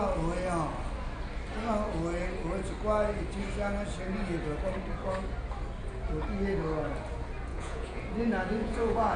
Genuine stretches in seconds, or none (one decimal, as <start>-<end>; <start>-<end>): 0.0-7.5; 8.0-8.6